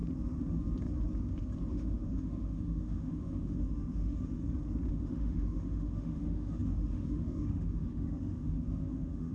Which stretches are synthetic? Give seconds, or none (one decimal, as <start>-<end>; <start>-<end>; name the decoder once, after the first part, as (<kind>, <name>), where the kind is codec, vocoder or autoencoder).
1.7-4.4 (autoencoder, DAC-VAE); 4.9-9.3